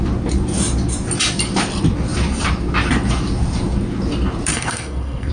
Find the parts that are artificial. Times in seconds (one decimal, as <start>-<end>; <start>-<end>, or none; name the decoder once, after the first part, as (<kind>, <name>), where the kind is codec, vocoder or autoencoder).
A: 4.5-5.3 (codec, SNAC)